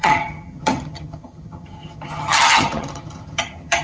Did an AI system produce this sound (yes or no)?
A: yes